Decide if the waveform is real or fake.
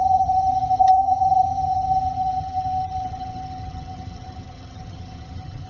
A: fake